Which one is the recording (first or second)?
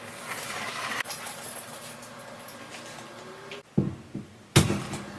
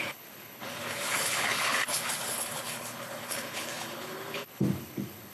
first